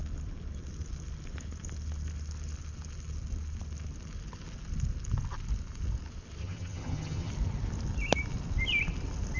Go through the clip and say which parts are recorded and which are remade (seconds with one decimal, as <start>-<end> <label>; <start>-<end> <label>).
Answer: 0.0-6.4 recorded; 6.4-7.3 remade; 7.3-9.4 recorded